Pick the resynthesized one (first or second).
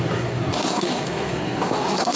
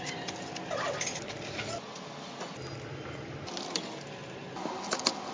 first